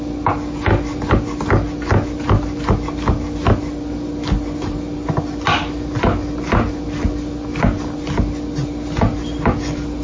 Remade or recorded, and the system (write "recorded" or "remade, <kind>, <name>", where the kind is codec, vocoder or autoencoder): recorded